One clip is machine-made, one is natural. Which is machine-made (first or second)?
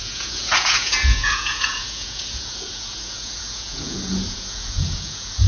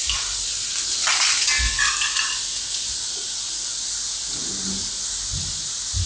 first